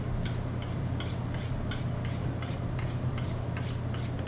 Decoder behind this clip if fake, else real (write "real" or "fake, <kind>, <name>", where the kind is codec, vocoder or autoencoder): real